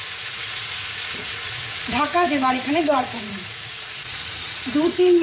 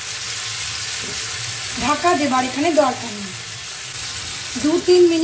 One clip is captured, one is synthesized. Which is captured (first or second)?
second